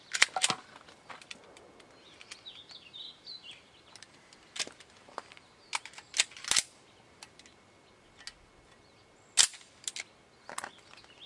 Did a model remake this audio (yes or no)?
no